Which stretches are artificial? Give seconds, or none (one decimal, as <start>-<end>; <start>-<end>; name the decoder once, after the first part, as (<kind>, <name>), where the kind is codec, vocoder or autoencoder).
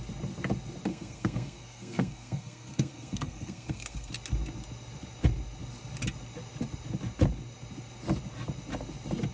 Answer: 0.9-4.1 (codec, SNAC)